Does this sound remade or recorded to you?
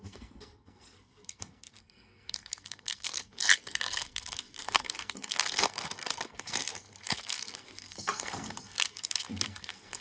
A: remade